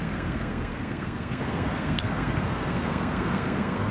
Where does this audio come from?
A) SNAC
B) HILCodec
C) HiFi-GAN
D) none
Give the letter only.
A